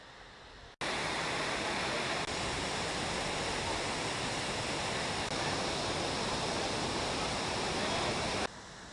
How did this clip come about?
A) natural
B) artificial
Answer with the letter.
A